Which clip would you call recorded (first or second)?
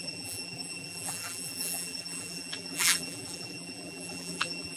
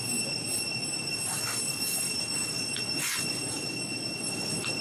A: second